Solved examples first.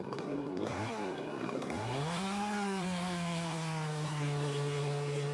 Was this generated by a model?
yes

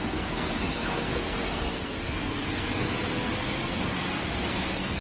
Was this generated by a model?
yes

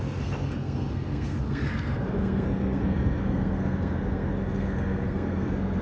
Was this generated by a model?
yes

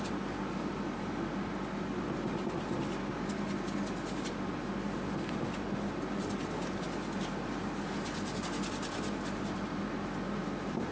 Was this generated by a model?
no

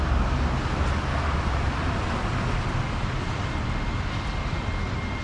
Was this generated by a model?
no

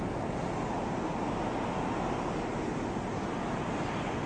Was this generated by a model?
no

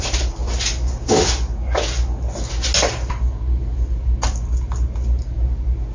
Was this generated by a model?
no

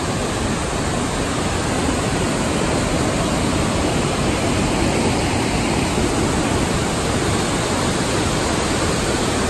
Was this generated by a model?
no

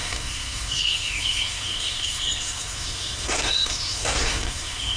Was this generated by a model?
yes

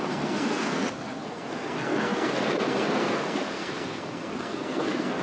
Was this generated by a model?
yes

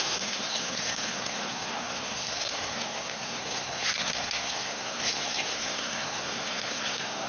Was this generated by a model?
yes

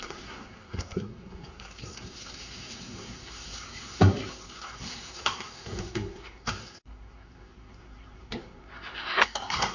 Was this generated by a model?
yes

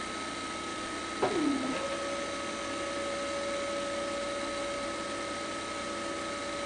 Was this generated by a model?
no